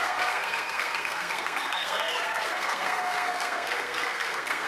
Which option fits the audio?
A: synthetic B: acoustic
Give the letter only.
A